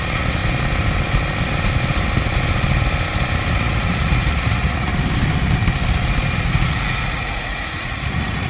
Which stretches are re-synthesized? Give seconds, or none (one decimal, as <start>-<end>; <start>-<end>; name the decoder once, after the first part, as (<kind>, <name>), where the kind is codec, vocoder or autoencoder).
0.0-0.4 (vocoder, Vocos); 3.5-4.9; 6.4-8.5